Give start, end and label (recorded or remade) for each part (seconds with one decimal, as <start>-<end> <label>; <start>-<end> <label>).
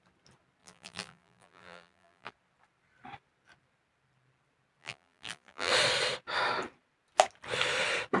0.0-0.6 recorded; 0.6-2.3 remade; 2.3-4.8 recorded; 4.8-5.7 remade; 5.7-8.2 recorded